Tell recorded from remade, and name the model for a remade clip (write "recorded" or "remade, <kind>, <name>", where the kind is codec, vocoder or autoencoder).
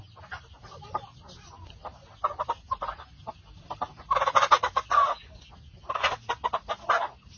recorded